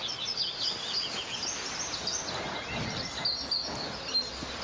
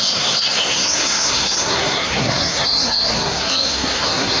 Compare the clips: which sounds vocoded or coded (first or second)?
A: second